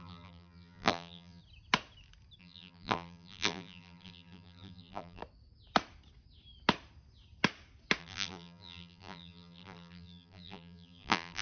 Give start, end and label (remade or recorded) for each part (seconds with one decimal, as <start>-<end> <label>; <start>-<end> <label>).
0.0-1.4 remade; 1.4-2.4 recorded; 2.4-5.2 remade; 5.2-8.0 recorded; 8.0-11.4 remade